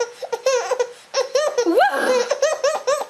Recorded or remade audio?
recorded